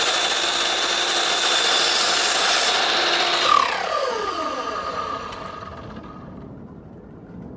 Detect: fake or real real